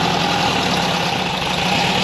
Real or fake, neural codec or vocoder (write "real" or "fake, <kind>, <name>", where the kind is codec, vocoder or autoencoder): real